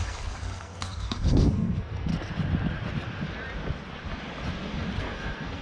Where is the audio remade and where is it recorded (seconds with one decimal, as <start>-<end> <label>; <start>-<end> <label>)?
0.0-2.1 remade; 2.1-5.0 recorded; 5.0-5.6 remade